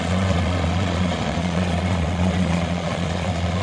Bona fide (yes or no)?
no